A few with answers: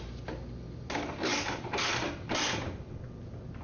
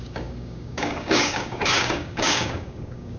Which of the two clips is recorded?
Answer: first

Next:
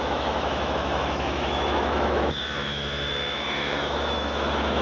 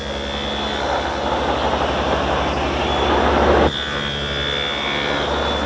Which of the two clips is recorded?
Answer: second